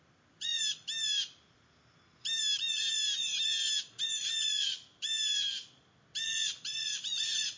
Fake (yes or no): yes